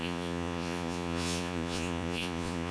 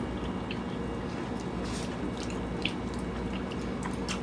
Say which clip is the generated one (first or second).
first